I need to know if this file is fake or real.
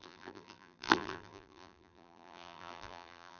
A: fake